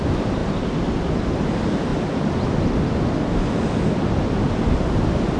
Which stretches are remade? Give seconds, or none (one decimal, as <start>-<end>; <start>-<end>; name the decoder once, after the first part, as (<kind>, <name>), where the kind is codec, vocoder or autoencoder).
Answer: 0.0-0.4 (vocoder, BigVGAN v2); 1.2-1.9